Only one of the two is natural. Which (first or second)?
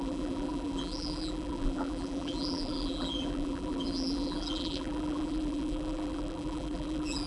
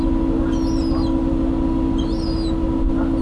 second